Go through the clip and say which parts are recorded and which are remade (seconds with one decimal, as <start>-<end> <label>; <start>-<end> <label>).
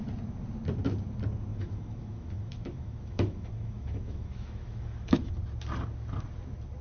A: 0.0-1.5 recorded; 1.5-5.3 remade; 5.3-6.8 recorded